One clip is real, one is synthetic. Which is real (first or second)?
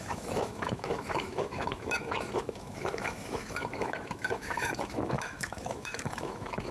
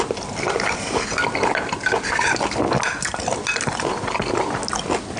second